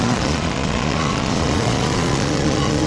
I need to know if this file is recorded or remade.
remade